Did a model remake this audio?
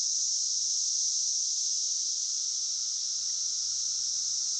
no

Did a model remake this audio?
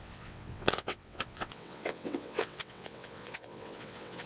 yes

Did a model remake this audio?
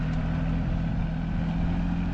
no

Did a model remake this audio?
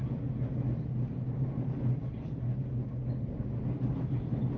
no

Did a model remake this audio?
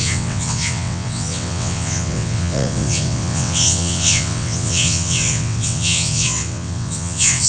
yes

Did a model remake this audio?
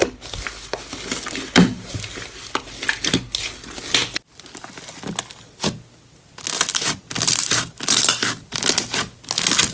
no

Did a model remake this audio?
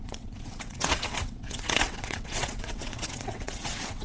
yes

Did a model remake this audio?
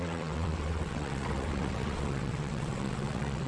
yes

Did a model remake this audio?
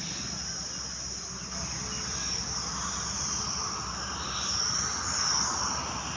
no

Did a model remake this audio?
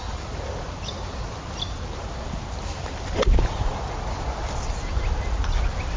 no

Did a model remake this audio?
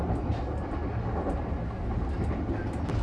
no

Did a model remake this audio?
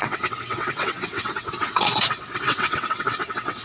yes